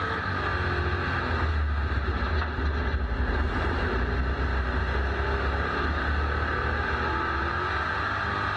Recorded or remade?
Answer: recorded